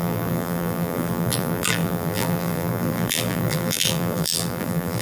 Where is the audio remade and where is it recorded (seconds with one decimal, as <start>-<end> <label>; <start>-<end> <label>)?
0.0-5.0 remade